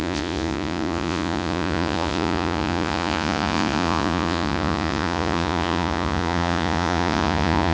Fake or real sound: fake